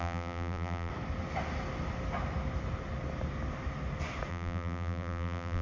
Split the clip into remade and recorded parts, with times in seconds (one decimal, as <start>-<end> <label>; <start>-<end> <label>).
0.0-0.9 remade; 0.9-4.3 recorded; 4.3-5.6 remade